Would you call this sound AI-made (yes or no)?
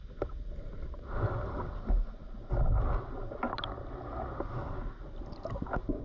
no